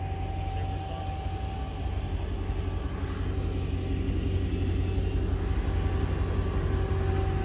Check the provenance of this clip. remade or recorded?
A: recorded